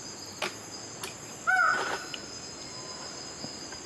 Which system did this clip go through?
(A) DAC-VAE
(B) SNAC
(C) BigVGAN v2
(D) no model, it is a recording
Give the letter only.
D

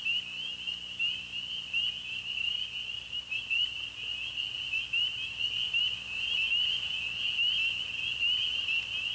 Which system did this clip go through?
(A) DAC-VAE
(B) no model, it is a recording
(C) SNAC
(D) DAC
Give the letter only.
B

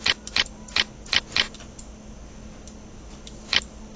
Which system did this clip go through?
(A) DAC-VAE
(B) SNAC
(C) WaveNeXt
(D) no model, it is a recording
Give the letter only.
D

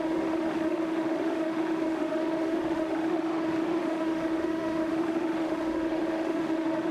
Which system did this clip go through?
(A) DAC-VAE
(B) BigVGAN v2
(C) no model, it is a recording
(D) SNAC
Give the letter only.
A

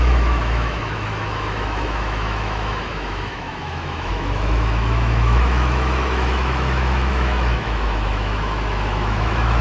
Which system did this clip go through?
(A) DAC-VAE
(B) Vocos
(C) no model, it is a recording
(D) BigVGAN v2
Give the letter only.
A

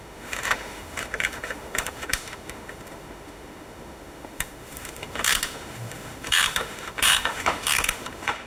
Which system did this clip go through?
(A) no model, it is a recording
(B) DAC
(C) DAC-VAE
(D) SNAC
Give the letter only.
C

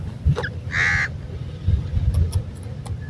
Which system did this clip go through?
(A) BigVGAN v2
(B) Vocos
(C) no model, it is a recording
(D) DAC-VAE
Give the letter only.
C